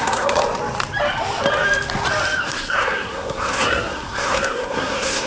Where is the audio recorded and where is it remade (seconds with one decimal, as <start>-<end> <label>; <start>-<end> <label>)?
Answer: 0.0-0.4 remade; 0.4-2.4 recorded; 2.4-5.3 remade